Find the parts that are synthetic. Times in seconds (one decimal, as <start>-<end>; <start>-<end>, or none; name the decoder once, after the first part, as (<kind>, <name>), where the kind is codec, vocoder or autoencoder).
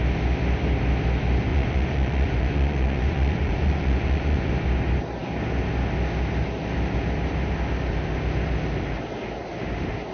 1.5-4.5 (vocoder, Vocos)